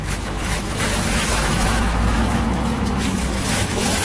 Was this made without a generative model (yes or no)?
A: no